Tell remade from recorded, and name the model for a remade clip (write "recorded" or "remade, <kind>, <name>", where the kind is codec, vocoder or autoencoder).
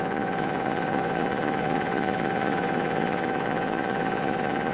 remade, vocoder, Vocos